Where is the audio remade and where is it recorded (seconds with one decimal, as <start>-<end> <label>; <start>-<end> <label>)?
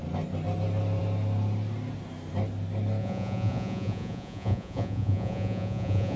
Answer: 0.0-3.0 recorded; 3.0-6.2 remade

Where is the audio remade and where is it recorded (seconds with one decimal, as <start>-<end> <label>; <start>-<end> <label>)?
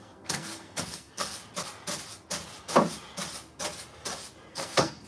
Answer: 0.0-1.4 remade; 1.4-4.5 recorded; 4.5-5.1 remade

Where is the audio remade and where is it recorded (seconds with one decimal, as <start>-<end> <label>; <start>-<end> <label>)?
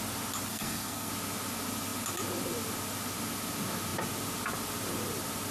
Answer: 0.0-0.5 recorded; 0.5-1.1 remade; 1.1-5.5 recorded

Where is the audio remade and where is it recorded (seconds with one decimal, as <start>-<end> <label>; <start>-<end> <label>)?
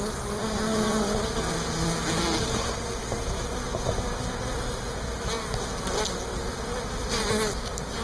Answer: 0.0-8.0 recorded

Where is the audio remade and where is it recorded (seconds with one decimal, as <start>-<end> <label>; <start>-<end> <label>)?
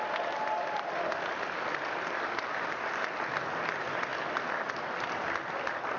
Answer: 0.0-6.0 recorded